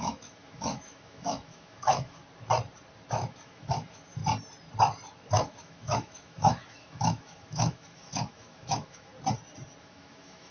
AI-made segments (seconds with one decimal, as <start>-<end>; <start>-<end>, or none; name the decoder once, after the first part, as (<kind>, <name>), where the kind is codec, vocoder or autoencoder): 0.0-2.2 (autoencoder, DAC-VAE); 3.1-4.2; 5.3-9.1; 9.8-10.5